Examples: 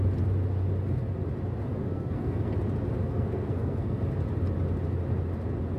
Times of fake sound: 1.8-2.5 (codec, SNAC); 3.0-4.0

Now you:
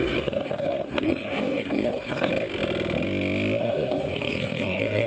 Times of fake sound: 0.0-2.3 (codec, SNAC); 3.6-5.1